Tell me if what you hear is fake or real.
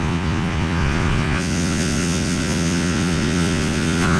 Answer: fake